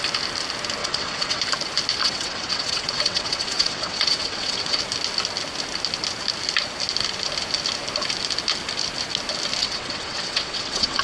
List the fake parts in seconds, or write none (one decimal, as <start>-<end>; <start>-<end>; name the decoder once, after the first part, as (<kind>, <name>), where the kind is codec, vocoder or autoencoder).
0.8-1.4 (vocoder, WaveNeXt); 2.0-4.8; 9.6-11.0